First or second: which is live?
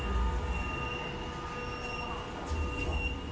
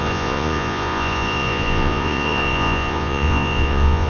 first